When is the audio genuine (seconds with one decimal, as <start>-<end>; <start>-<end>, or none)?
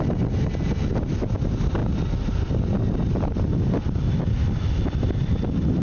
0.0-5.8